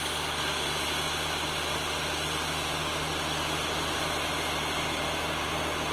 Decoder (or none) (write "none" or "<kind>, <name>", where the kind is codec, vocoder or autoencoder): none